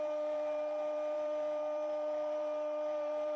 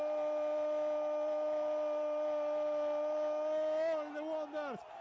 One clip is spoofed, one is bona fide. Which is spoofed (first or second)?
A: first